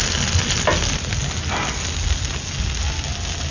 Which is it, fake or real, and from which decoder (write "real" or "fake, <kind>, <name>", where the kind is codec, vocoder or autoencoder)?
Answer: real